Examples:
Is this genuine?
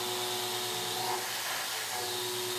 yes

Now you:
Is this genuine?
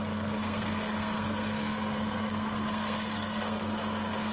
no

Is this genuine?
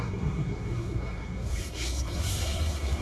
no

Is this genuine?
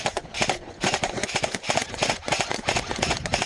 no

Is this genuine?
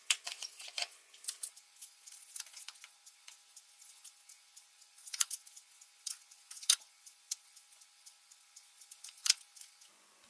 no